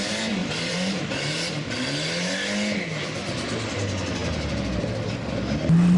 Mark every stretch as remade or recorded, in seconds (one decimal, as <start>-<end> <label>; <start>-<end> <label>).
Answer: 0.0-0.4 recorded; 0.4-1.0 remade; 1.0-6.0 recorded